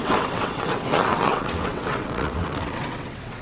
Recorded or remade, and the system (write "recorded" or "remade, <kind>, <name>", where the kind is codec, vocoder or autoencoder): remade, vocoder, WaveNeXt